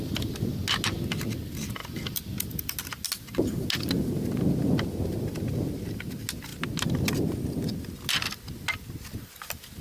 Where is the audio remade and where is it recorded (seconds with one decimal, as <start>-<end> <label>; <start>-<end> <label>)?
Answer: 0.0-9.8 recorded